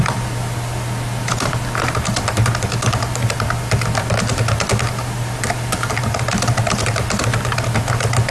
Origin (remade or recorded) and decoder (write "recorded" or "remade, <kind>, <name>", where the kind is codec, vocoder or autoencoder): recorded